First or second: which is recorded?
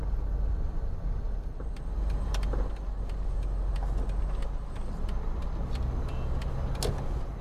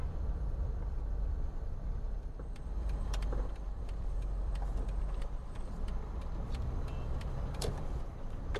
first